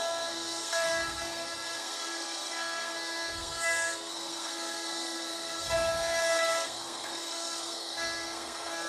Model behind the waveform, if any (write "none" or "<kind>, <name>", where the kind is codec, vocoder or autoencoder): codec, SNAC